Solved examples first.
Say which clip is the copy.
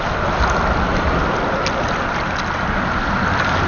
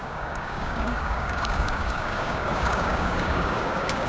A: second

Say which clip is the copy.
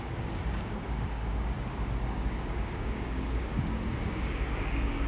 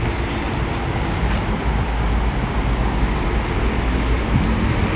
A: first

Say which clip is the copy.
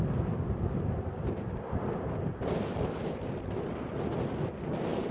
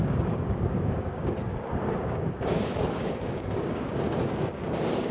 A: second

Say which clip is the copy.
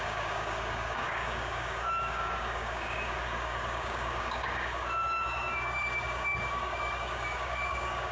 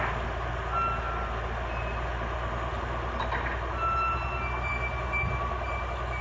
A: first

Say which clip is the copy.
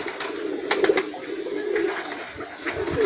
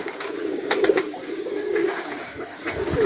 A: second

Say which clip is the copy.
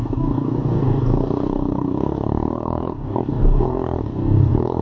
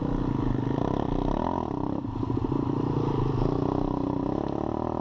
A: first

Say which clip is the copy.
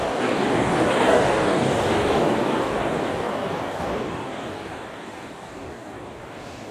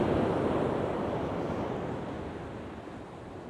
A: first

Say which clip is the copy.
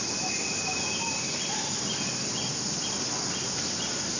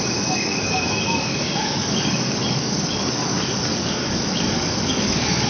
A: second